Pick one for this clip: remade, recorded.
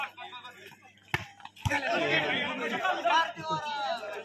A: recorded